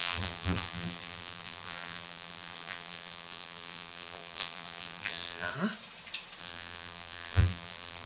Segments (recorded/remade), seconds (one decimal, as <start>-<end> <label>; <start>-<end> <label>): 0.0-5.5 remade; 5.5-6.4 recorded; 6.4-8.1 remade